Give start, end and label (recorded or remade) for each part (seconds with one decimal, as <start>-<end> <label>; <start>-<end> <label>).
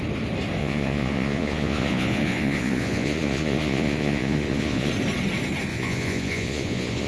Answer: 0.0-0.6 recorded; 0.6-4.9 remade; 4.9-5.7 recorded; 5.7-7.1 remade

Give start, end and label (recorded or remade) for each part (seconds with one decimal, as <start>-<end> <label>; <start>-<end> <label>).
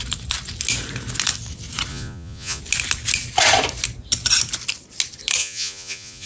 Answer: 0.0-1.9 recorded; 1.9-2.6 remade; 2.6-5.4 recorded; 5.4-6.3 remade